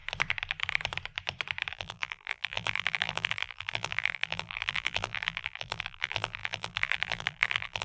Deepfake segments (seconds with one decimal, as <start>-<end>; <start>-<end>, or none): 1.7-7.8